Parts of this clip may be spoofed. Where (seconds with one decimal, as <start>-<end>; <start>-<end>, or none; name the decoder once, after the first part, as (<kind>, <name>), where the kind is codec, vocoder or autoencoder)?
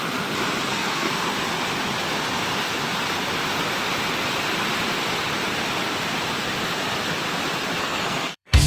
0.7-1.2 (codec, SNAC); 7.8-8.7